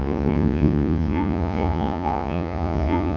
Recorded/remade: remade